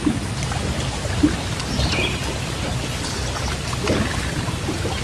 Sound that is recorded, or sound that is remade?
recorded